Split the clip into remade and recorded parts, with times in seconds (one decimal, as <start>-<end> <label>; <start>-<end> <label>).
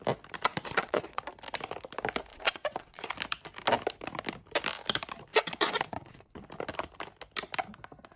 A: 0.0-0.5 recorded; 0.5-1.2 remade; 1.2-2.3 recorded; 2.3-3.1 remade; 3.1-5.3 recorded; 5.3-6.4 remade; 6.4-8.2 recorded